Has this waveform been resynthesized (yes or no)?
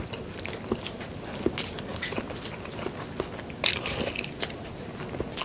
no